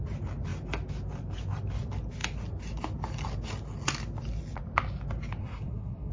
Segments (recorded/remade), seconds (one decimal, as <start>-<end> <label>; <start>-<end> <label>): 0.0-5.4 recorded; 5.4-6.1 remade